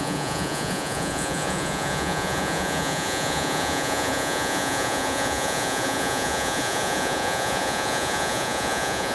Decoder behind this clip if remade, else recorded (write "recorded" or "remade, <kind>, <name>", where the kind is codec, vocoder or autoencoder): remade, vocoder, Vocos